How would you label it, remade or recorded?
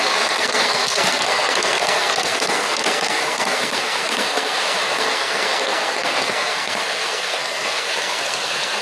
remade